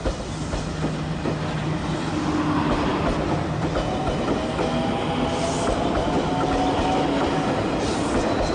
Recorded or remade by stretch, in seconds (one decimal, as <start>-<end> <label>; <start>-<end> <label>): 0.0-8.5 recorded